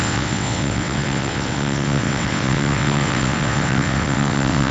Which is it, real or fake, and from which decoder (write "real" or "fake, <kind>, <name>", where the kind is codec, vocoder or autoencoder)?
fake, vocoder, WaveNeXt